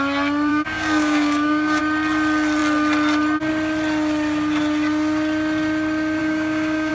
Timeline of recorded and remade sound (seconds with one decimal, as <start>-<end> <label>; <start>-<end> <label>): 0.0-0.5 recorded; 0.5-1.8 remade; 1.8-6.2 recorded; 6.2-6.9 remade